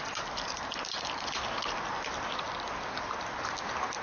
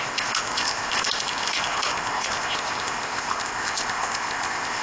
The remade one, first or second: second